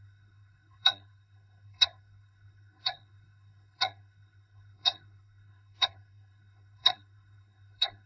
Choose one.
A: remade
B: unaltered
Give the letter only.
A